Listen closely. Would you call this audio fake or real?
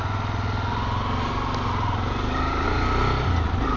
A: real